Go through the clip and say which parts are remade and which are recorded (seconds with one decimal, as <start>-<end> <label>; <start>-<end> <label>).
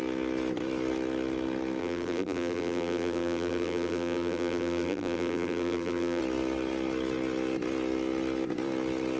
0.0-1.8 recorded; 1.8-6.2 remade; 6.2-9.2 recorded